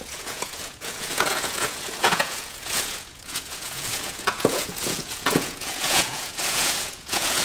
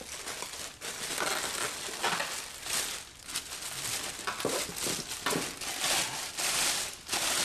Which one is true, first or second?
second